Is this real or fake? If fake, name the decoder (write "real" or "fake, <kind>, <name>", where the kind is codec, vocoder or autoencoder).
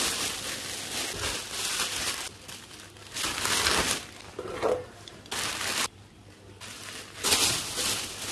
real